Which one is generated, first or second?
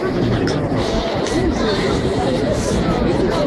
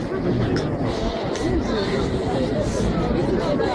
first